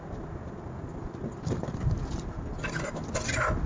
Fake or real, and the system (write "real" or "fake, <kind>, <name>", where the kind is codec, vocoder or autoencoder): real